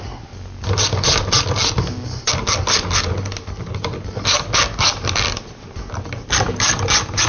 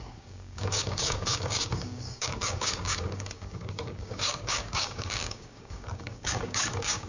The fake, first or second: second